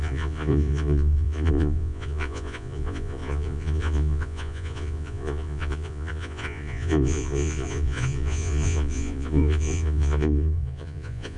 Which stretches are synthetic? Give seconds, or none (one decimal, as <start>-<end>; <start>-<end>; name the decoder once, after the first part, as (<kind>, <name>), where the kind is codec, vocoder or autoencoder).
0.0-11.4 (vocoder, Vocos)